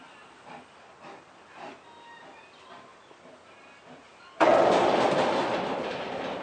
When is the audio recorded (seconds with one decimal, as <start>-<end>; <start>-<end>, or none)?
0.0-6.4